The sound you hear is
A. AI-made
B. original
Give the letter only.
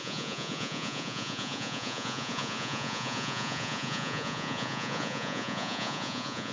A